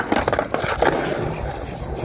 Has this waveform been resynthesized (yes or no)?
no